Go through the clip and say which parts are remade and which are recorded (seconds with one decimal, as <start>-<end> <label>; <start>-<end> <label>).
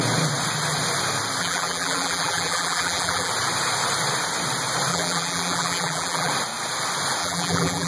0.0-1.4 recorded; 1.4-3.3 remade; 3.3-4.9 recorded; 4.9-6.3 remade; 6.3-7.2 recorded; 7.2-7.9 remade